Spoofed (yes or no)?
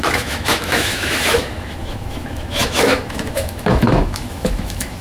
yes